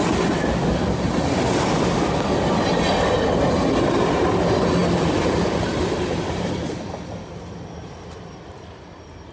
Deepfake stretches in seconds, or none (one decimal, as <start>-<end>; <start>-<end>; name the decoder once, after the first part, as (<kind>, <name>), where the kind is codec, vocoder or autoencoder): none